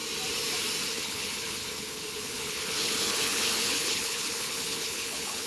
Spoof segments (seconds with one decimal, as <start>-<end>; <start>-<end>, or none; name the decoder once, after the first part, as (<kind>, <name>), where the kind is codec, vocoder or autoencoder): 0.9-5.5 (codec, HILCodec)